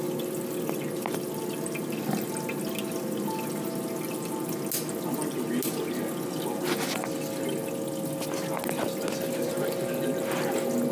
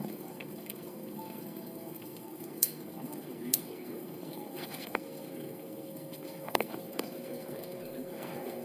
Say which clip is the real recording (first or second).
first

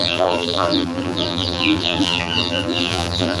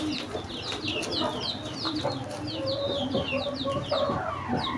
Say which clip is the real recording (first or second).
second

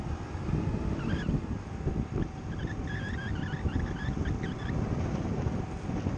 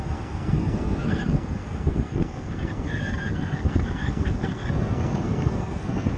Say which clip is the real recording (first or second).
first